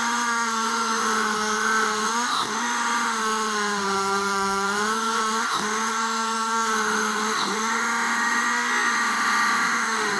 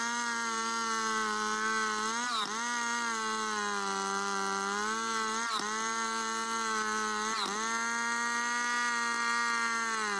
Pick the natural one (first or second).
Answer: second